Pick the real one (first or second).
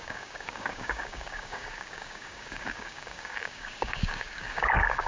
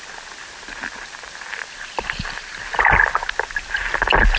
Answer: second